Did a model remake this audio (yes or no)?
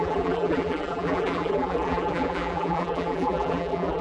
yes